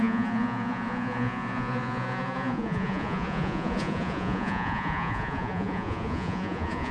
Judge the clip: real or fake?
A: fake